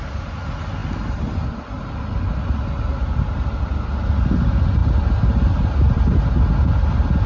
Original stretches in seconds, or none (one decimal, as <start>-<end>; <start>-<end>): 0.0-0.8; 2.4-2.9; 4.0-7.3